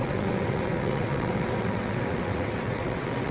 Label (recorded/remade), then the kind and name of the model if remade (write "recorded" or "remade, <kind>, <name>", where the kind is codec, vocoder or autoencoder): remade, vocoder, WaveNeXt